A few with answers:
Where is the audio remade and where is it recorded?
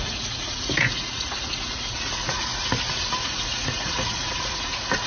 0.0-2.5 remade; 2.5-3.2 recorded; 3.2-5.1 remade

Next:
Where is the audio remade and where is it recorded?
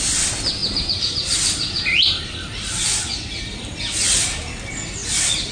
0.0-5.5 recorded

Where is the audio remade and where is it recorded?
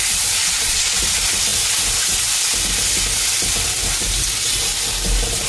0.0-0.4 recorded; 0.4-1.0 remade; 1.0-5.5 recorded